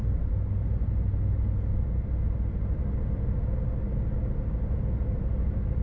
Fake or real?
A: real